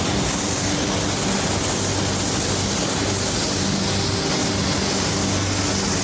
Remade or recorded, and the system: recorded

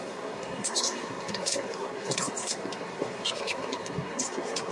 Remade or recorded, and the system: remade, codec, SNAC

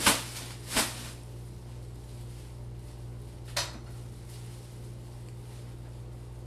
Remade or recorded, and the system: recorded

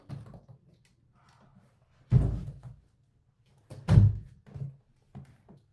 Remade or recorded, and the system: recorded